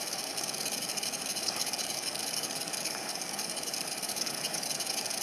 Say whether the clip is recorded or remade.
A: remade